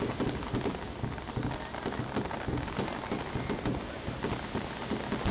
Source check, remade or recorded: recorded